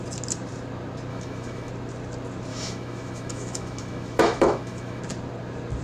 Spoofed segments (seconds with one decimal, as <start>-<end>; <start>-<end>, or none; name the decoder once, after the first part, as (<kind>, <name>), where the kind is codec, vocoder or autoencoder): 1.1-1.7 (autoencoder, DAC-VAE); 2.5-5.0